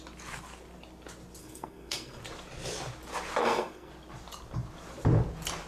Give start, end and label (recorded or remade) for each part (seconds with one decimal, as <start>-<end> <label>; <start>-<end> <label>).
0.0-1.4 recorded; 1.4-2.2 remade; 2.2-3.4 recorded; 3.4-3.9 remade; 3.9-5.7 recorded